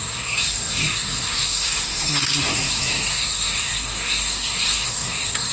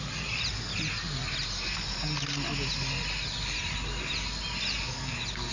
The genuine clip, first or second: second